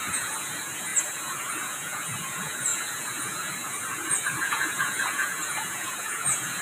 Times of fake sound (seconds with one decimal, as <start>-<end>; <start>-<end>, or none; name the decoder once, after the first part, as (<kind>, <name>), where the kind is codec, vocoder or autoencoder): 0.0-6.6 (vocoder, Vocos)